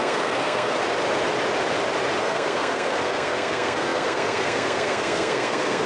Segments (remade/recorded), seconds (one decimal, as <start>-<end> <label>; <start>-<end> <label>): 0.0-0.8 remade; 0.8-2.2 recorded; 2.2-5.9 remade